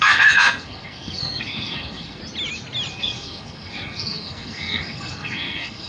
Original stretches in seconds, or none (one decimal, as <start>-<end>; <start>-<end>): 2.2-2.9